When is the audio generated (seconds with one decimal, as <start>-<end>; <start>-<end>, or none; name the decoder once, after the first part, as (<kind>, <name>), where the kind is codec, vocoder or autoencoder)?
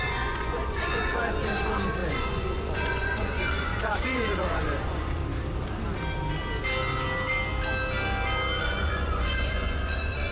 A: 0.0-5.2 (vocoder, Vocos); 8.6-10.3